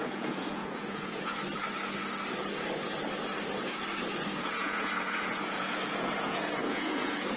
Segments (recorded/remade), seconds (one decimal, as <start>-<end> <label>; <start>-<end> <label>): 0.0-1.4 remade; 1.4-4.4 recorded; 4.4-7.4 remade